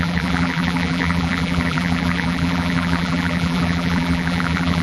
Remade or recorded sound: remade